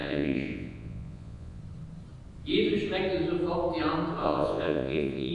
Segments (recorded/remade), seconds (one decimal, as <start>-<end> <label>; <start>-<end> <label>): 0.0-1.6 remade; 1.6-4.2 recorded; 4.2-5.3 remade